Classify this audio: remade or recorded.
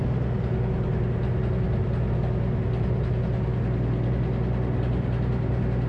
recorded